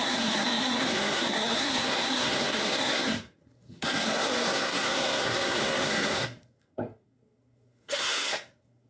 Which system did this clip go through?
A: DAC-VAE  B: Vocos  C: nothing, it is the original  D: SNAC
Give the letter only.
D